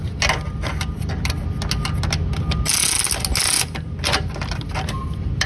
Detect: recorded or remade recorded